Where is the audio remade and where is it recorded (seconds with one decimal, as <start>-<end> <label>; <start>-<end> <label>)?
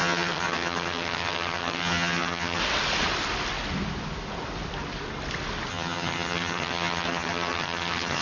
0.0-2.6 remade; 2.6-5.7 recorded; 5.7-8.2 remade